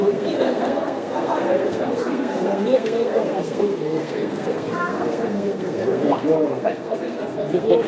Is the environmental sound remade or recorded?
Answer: remade